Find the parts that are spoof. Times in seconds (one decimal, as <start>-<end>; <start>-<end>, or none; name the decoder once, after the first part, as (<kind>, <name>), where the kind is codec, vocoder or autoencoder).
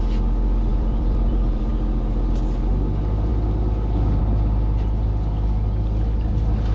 0.7-1.7 (vocoder, BigVGAN v2)